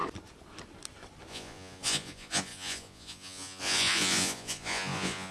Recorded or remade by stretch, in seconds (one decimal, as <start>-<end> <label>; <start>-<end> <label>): 0.0-1.3 recorded; 1.3-5.3 remade